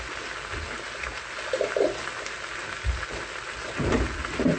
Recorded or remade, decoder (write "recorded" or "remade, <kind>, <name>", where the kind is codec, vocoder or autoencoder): recorded